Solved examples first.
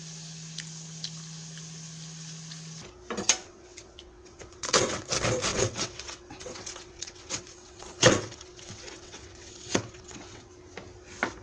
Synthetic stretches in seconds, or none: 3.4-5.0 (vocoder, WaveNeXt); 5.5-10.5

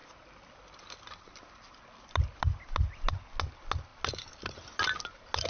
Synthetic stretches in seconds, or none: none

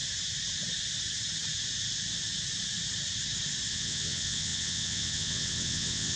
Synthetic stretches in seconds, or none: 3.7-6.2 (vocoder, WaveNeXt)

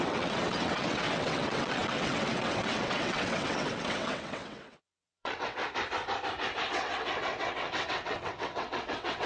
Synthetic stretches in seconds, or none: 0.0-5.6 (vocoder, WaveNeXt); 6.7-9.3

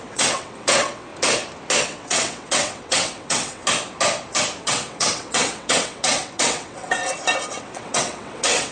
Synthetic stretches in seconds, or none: 0.0-1.1 (vocoder, WaveNeXt); 1.8-3.6; 4.6-7.0; 7.6-8.7

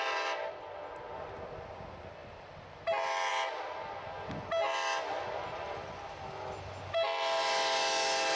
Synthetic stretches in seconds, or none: none

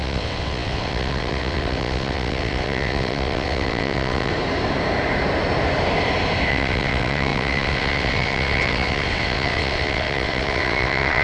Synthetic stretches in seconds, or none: 0.0-4.3 (vocoder, WaveNeXt); 6.5-11.2